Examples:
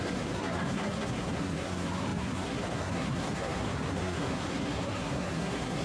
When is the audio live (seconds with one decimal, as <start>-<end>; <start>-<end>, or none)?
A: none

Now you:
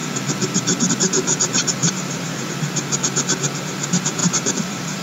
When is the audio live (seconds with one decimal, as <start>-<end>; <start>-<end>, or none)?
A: 0.0-1.8; 2.5-4.2

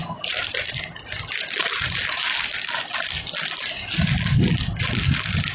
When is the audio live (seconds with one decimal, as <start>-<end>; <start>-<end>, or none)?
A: 0.0-5.5

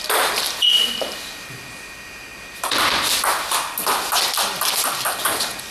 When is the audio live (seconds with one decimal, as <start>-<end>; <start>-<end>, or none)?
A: 0.0-5.7

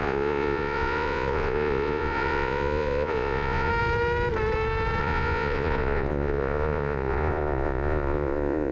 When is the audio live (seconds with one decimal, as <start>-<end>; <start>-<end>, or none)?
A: 3.7-5.0